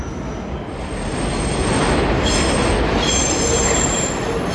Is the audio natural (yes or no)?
yes